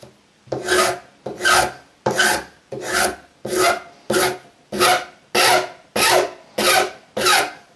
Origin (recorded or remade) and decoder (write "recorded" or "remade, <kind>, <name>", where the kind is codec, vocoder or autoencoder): recorded